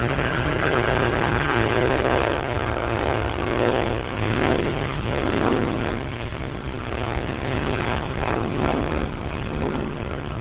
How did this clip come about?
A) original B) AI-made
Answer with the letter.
B